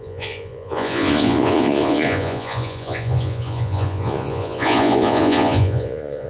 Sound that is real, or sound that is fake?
fake